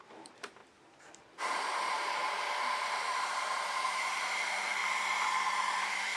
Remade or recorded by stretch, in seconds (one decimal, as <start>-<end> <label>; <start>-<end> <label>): 0.0-0.6 remade; 0.6-3.2 recorded; 3.2-4.8 remade; 4.8-5.8 recorded; 5.8-6.2 remade